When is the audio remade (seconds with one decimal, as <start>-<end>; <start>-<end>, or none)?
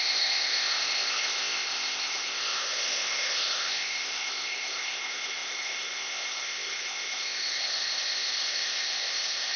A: 0.0-9.6